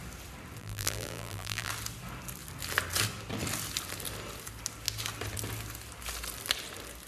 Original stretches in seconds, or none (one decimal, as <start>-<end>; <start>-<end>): 0.0-0.6; 1.7-7.1